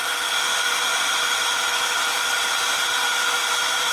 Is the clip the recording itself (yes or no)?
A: yes